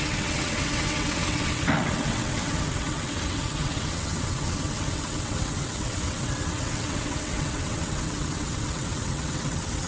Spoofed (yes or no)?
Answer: yes